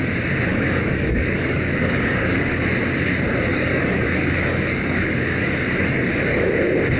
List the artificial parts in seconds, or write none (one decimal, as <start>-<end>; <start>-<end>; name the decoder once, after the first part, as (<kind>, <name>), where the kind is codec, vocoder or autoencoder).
0.5-2.8 (codec, DAC); 3.5-6.4